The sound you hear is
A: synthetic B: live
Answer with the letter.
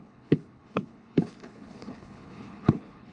A